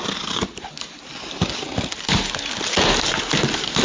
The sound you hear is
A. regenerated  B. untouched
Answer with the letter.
B